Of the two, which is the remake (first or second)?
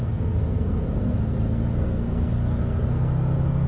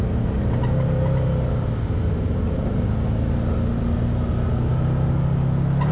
first